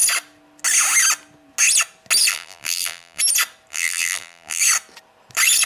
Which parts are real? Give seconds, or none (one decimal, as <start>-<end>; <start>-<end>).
0.0-2.3; 3.2-3.7; 4.6-5.7